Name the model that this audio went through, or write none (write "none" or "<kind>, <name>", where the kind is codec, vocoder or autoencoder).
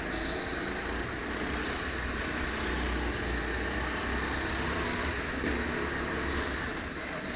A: none